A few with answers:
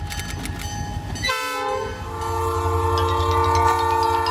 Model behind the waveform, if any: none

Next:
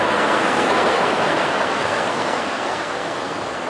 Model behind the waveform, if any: codec, SNAC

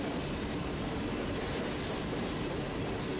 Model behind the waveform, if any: none